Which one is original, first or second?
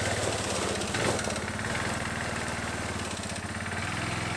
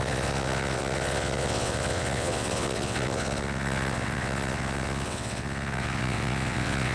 first